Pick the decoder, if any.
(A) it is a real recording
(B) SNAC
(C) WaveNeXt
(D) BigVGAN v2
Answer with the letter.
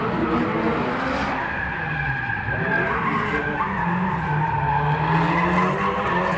A